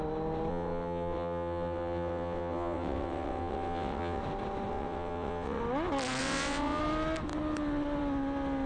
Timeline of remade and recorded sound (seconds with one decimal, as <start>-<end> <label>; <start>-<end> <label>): 0.0-0.5 recorded; 0.5-4.2 remade; 4.2-4.7 recorded; 4.7-5.6 remade; 5.6-6.2 recorded; 6.2-6.8 remade; 6.8-8.7 recorded